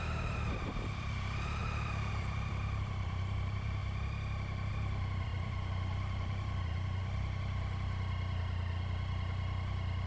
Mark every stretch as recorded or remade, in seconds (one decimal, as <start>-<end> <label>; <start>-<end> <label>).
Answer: 0.0-3.8 remade; 3.8-4.7 recorded; 4.7-7.0 remade; 7.0-10.1 recorded